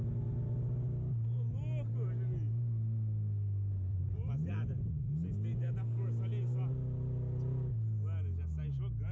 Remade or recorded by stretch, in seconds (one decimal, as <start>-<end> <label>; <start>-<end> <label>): 0.0-3.9 recorded; 3.9-4.9 remade; 4.9-9.1 recorded